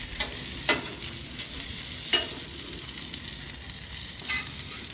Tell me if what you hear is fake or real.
real